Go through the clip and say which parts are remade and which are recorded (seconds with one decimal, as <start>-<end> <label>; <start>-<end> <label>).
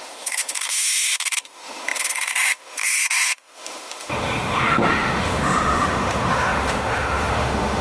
0.0-7.8 remade